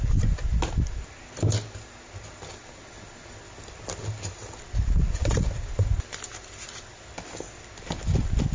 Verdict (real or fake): real